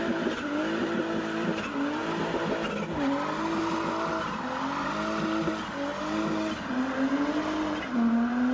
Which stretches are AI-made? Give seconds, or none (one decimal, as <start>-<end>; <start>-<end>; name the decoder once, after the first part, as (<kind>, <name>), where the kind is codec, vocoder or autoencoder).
none